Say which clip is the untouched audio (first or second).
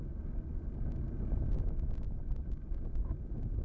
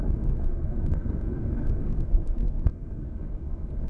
first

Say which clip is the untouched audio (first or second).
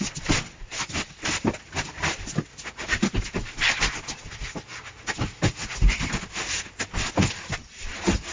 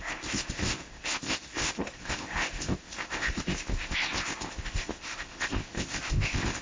first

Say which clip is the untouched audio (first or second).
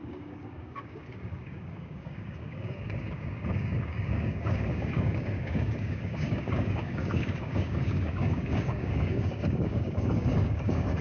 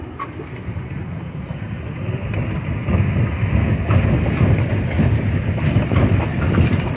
second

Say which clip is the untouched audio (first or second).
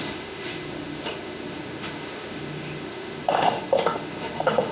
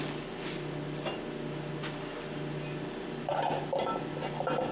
second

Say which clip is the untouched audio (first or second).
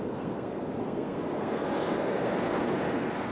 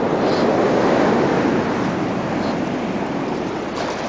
second